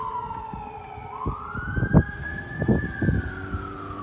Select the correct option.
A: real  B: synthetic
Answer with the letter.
A